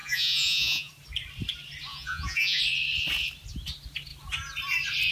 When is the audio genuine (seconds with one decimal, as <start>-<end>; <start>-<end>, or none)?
0.9-1.9; 2.6-5.1